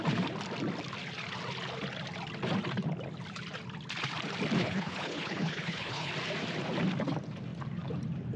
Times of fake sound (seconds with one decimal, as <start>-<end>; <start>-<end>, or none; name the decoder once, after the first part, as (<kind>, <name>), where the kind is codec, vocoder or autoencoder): 4.6-6.1 (codec, HILCodec)